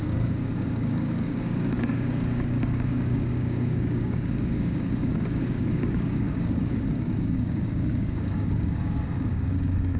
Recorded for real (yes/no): no